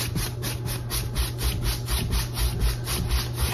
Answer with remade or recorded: recorded